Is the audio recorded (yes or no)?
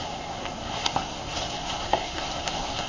no